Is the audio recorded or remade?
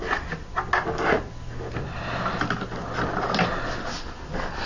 recorded